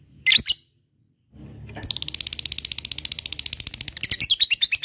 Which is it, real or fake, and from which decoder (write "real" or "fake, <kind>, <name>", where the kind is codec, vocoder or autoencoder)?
real